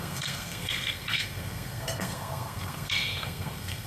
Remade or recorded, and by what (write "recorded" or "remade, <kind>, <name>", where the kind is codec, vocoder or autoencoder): remade, codec, SNAC